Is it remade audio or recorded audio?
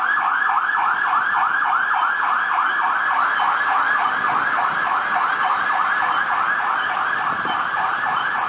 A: recorded